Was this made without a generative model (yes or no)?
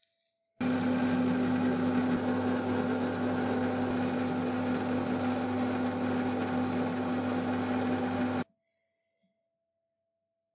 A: yes